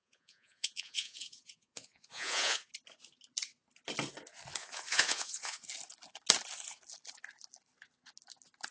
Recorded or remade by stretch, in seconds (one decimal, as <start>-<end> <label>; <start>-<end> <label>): 0.0-2.7 remade; 2.7-4.6 recorded; 4.6-5.6 remade; 5.6-8.7 recorded